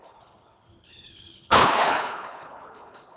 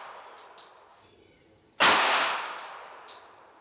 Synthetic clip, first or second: first